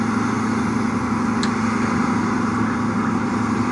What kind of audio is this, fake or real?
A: real